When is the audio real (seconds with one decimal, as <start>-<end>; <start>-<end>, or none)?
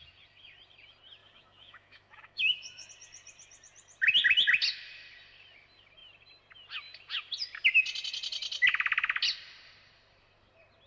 0.0-1.2; 2.9-10.9